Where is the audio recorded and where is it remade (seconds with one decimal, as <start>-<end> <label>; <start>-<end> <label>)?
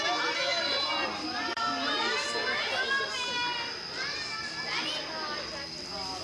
0.0-0.5 recorded; 0.5-2.9 remade; 2.9-6.2 recorded